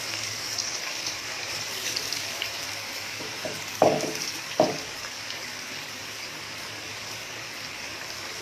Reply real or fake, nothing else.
fake